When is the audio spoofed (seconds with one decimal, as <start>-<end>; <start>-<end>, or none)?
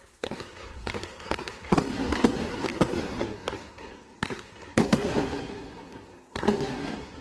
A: 0.0-7.2